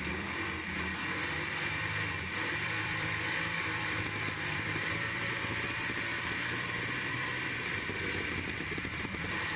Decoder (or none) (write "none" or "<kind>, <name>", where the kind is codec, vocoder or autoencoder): vocoder, BigVGAN v2